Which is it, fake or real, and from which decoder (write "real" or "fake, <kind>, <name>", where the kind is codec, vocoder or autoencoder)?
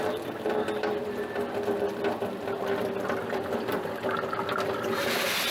real